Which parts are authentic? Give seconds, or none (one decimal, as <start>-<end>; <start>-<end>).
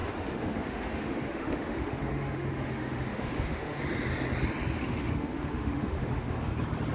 3.8-4.8; 6.5-6.9